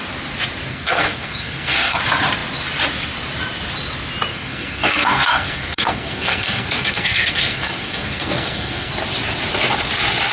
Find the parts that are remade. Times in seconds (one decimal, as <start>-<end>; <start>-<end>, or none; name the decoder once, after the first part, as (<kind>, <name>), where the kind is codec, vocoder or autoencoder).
0.7-2.0 (codec, SNAC); 4.3-8.9